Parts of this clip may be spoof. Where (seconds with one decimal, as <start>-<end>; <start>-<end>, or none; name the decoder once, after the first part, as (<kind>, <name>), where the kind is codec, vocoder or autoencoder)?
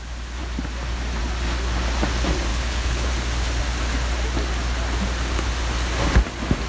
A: 2.5-3.1 (codec, HILCodec)